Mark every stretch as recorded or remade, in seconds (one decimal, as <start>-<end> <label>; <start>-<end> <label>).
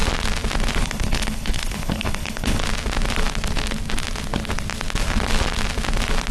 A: 0.0-0.8 recorded; 0.8-2.6 remade; 2.6-6.3 recorded